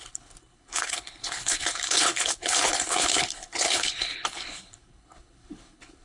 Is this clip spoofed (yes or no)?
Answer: yes